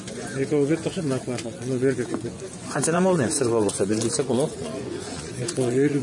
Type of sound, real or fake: fake